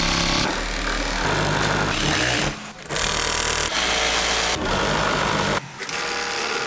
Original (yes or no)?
yes